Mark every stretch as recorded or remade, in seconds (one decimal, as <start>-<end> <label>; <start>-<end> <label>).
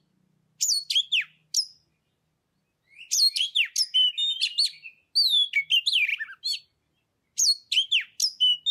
0.0-8.7 recorded